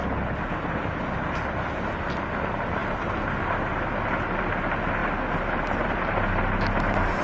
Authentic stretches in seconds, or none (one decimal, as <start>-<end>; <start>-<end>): 0.0-7.2

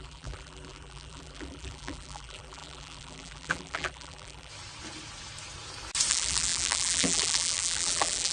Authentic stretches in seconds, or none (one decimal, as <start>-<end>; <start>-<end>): 4.5-6.1

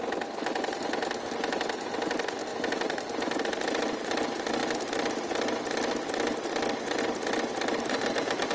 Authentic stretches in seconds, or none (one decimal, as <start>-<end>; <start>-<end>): 0.0-8.5

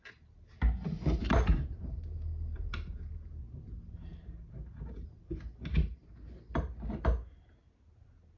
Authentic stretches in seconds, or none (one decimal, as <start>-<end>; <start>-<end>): 0.0-1.2; 1.8-5.8; 6.5-8.4